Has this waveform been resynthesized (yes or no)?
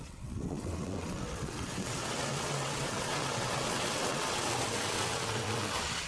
yes